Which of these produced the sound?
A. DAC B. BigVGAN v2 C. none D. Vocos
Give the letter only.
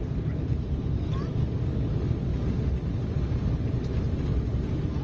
C